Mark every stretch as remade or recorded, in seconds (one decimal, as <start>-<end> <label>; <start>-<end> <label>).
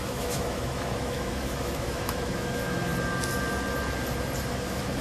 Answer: 0.0-2.9 remade; 2.9-4.5 recorded; 4.5-5.0 remade